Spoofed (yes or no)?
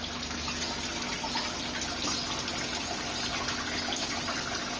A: no